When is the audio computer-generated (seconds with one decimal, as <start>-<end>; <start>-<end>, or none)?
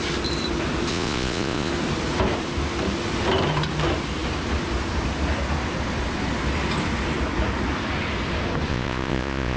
0.9-1.7; 8.7-9.6